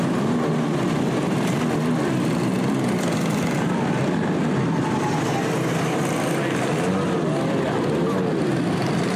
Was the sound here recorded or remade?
recorded